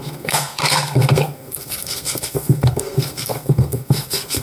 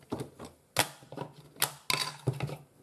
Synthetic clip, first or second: first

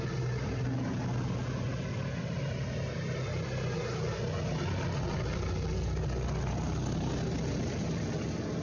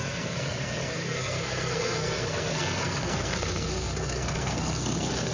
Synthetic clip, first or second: second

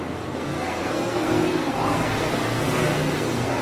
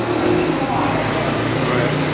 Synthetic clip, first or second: first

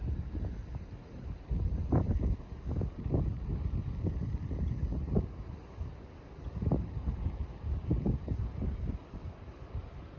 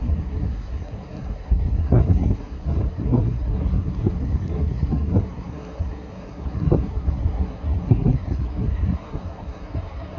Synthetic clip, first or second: second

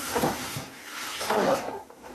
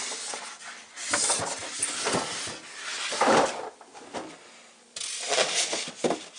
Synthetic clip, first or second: first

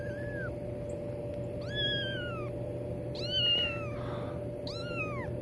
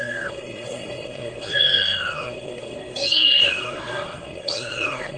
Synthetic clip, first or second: second